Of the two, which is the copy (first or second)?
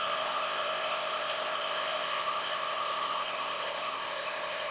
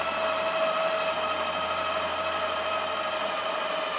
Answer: first